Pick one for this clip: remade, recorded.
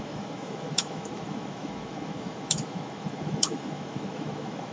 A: remade